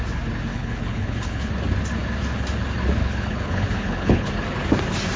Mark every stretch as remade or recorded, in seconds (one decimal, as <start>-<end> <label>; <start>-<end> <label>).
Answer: 0.0-0.5 recorded; 0.5-1.5 remade; 1.5-3.0 recorded; 3.0-4.3 remade; 4.3-5.2 recorded